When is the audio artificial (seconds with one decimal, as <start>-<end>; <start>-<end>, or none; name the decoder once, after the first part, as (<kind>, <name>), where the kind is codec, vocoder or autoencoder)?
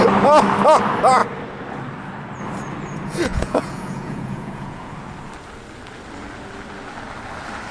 3.3-4.9 (vocoder, Vocos)